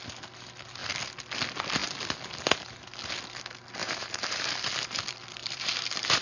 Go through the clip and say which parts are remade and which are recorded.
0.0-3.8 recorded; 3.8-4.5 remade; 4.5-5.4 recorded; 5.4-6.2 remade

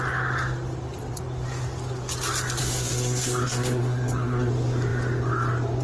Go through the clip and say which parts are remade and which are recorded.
0.0-2.6 recorded; 2.6-4.5 remade; 4.5-5.8 recorded

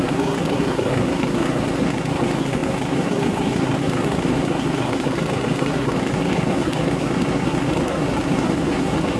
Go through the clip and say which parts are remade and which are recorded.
0.0-9.2 remade